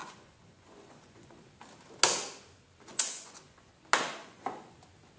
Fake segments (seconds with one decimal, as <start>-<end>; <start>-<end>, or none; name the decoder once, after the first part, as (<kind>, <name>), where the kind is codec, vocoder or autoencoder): 0.0-1.4 (vocoder, Vocos); 2.9-3.7; 4.2-4.8